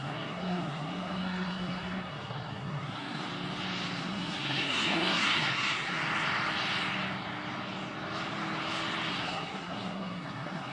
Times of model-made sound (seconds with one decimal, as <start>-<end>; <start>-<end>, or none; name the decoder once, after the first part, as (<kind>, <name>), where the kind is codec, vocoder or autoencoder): 0.0-3.3 (codec, SNAC); 4.0-6.0; 9.1-10.7